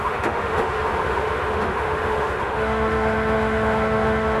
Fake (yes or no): yes